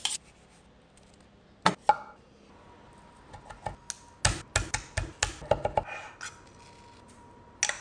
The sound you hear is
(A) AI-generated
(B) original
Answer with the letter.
B